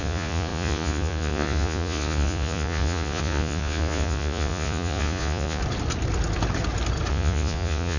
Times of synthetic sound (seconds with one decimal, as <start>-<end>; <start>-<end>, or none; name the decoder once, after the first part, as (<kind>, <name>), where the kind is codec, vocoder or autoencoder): 0.0-5.6 (vocoder, Vocos); 7.1-8.0